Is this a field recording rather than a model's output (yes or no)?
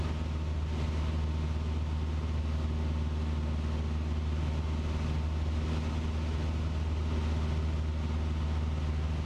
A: yes